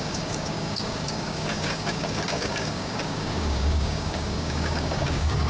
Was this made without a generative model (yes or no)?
no